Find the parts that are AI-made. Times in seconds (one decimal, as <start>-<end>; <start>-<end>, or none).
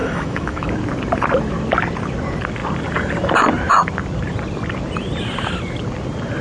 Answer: 0.0-0.7